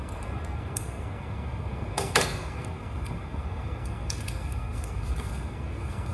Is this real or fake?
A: fake